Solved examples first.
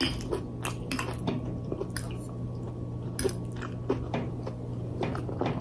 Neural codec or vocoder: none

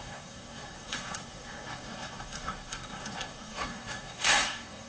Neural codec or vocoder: codec, SNAC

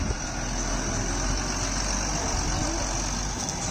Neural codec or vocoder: none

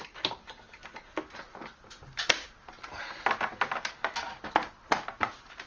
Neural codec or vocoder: none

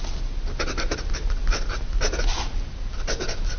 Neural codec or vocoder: none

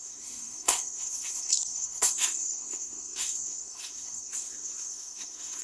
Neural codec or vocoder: codec, SNAC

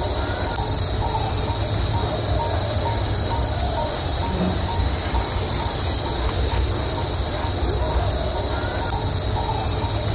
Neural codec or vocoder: none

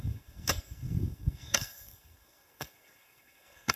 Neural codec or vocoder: codec, SNAC